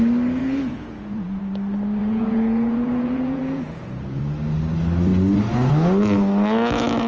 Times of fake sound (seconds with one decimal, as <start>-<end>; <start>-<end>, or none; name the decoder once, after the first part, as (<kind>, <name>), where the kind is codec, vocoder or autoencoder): 0.4-1.4 (vocoder, Vocos); 2.0-4.2